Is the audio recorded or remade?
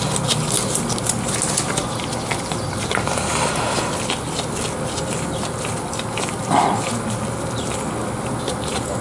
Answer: recorded